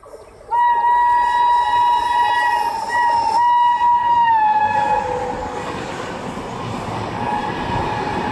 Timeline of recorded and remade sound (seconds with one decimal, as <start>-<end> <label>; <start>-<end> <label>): 0.0-4.0 recorded; 4.0-5.0 remade; 5.0-5.4 recorded; 5.4-5.9 remade; 5.9-8.3 recorded